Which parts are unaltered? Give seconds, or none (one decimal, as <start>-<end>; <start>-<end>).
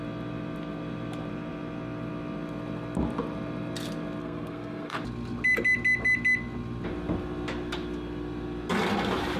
0.0-4.2; 5.0-9.4